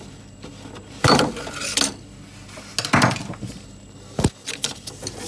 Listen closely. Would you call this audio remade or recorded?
recorded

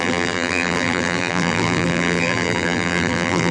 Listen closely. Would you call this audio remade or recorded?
remade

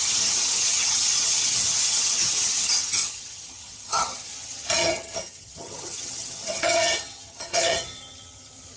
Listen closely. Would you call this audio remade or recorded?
remade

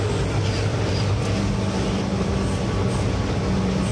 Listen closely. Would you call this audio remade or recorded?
recorded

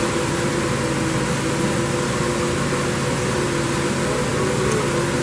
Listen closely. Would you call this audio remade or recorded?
recorded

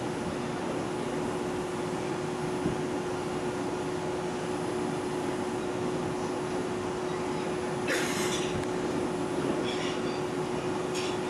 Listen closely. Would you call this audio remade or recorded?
recorded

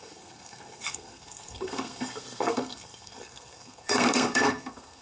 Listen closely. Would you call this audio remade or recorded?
remade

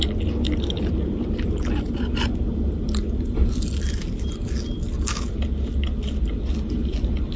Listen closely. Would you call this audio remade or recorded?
recorded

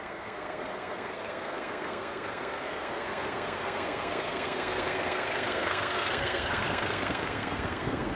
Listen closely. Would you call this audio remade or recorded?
remade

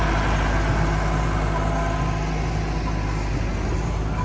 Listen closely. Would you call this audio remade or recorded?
recorded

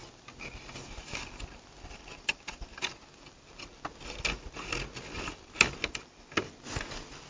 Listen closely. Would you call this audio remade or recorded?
recorded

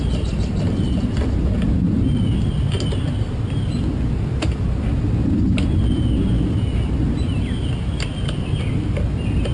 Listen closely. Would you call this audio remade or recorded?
recorded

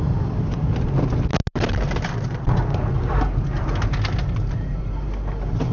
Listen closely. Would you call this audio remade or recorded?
recorded